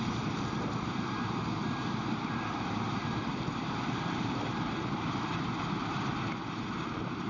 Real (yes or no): no